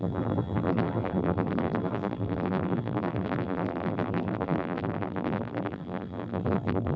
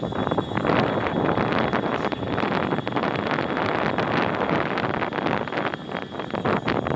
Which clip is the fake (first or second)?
first